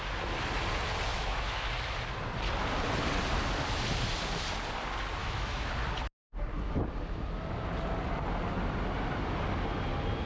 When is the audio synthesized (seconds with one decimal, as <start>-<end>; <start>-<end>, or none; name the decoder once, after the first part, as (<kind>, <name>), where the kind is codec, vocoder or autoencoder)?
1.1-1.7 (autoencoder, DAC-VAE); 5.2-5.7